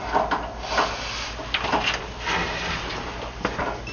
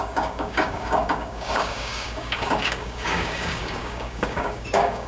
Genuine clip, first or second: first